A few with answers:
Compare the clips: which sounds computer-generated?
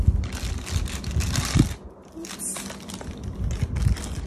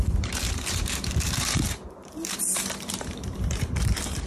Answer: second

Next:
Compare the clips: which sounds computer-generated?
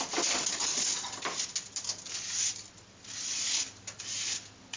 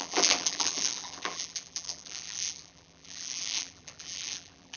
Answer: second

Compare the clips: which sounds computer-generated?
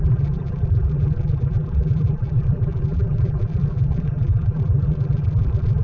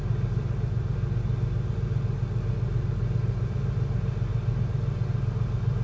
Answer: first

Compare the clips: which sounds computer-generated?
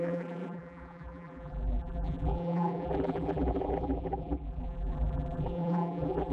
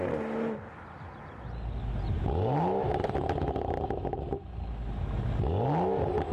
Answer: first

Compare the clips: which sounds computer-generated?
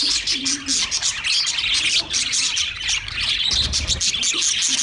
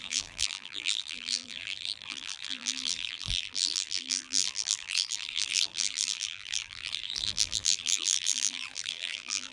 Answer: second